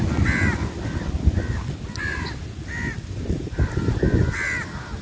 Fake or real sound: real